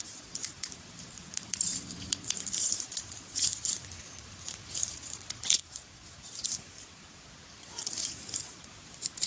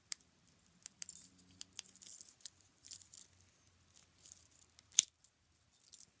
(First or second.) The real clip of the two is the second